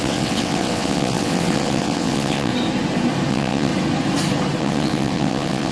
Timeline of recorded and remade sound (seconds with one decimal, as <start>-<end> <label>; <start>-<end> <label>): 0.0-2.5 remade; 2.5-3.3 recorded; 3.3-3.7 remade; 3.7-4.6 recorded; 4.6-5.7 remade